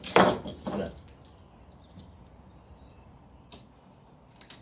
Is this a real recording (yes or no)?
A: yes